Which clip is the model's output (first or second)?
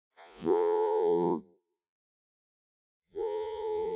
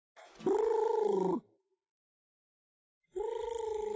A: first